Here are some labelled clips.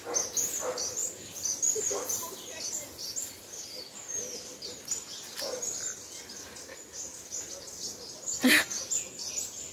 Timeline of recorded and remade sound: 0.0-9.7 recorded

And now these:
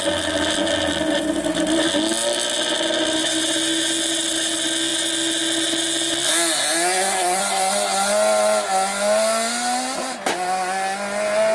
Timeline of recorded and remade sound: 0.0-11.5 recorded

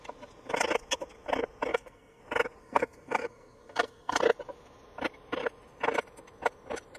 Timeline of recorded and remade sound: 0.0-1.7 recorded; 1.7-2.2 remade; 2.2-2.6 recorded; 2.6-4.2 remade; 4.2-7.0 recorded

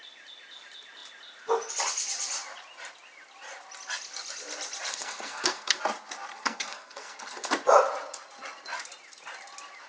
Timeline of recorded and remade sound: 0.0-4.9 recorded; 4.9-5.8 remade; 5.8-6.3 recorded; 6.3-7.5 remade; 7.5-9.9 recorded

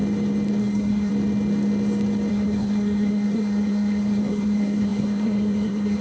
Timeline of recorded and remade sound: 0.0-0.6 recorded; 0.6-1.1 remade; 1.1-2.3 recorded; 2.3-6.0 remade

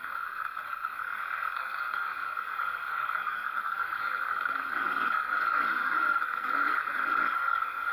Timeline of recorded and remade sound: 0.0-7.9 remade

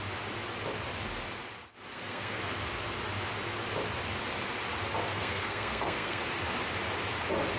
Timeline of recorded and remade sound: 0.0-1.9 recorded; 1.9-2.4 remade; 2.4-5.1 recorded; 5.1-6.2 remade; 6.2-7.6 recorded